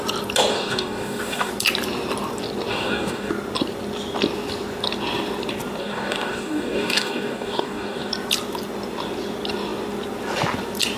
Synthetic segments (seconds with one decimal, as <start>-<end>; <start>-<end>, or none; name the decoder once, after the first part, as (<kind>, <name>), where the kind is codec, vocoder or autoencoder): 0.5-1.5 (codec, DAC); 2.7-3.3; 5.8-8.1